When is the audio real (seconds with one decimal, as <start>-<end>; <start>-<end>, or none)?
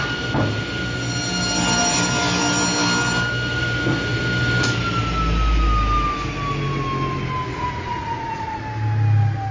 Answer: 0.0-7.5; 8.6-9.5